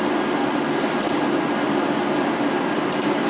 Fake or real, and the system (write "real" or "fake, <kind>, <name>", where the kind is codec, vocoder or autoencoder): real